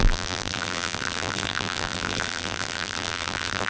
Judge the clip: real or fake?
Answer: fake